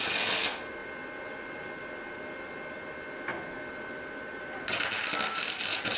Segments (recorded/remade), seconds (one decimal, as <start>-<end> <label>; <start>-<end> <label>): 0.0-6.0 recorded